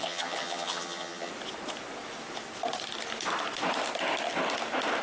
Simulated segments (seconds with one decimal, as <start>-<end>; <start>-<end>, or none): 0.0-1.3